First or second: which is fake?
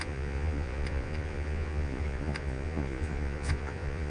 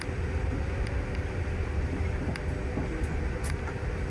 first